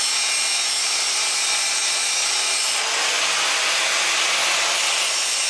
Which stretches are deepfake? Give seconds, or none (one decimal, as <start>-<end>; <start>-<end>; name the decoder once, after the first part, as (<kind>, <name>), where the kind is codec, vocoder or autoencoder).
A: none